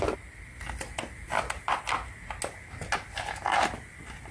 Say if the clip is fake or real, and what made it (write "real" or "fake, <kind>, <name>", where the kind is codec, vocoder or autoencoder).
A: real